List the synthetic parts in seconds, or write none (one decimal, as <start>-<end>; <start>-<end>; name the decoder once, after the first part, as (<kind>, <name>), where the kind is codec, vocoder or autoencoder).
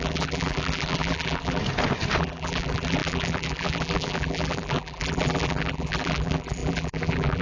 0.0-1.6 (vocoder, BigVGAN v2); 2.2-7.4